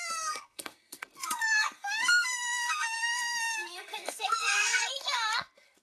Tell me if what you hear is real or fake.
fake